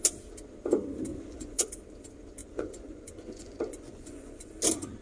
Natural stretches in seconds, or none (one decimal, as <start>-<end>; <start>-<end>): 0.0-1.1; 1.6-2.4; 4.5-5.0

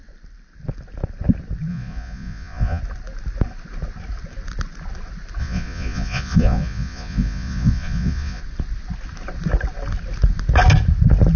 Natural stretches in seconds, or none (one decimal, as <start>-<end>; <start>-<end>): 0.0-1.7; 2.8-5.4; 8.4-11.4

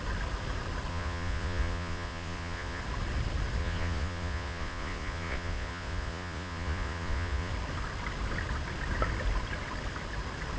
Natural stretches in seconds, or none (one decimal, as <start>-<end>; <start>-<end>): 0.0-0.9; 2.8-3.6; 7.5-10.6

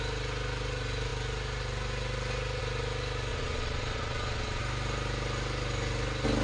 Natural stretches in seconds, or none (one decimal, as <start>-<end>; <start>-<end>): 0.0-3.3; 4.6-6.4

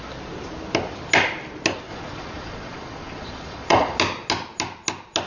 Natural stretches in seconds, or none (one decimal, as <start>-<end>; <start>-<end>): 0.0-1.9; 4.0-5.3

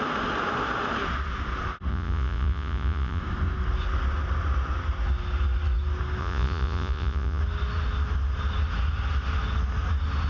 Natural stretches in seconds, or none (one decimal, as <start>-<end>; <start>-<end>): 0.0-1.9; 3.2-6.2; 7.4-10.3

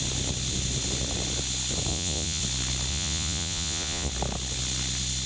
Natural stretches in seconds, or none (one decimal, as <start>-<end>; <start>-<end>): 0.0-1.9; 2.4-2.9; 4.1-5.3

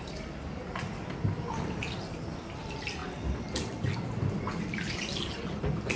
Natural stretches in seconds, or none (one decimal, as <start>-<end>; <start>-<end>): 0.0-6.0